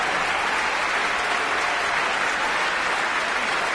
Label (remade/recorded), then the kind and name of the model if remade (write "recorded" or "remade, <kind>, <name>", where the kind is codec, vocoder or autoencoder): recorded